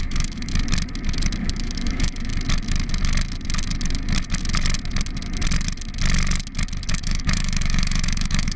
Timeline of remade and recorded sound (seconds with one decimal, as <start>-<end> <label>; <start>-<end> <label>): 0.0-0.5 remade; 0.5-1.4 recorded; 1.4-2.3 remade; 2.3-6.9 recorded; 6.9-8.6 remade